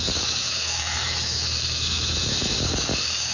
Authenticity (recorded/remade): remade